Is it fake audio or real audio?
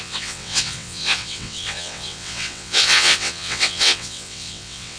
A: fake